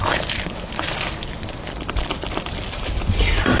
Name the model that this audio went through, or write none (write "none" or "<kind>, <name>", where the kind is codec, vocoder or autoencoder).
none